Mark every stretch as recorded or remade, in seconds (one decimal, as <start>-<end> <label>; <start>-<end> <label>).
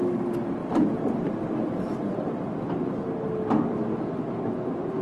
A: 0.0-0.6 recorded; 0.6-1.5 remade; 1.5-5.0 recorded